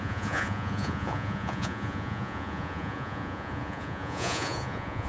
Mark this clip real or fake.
fake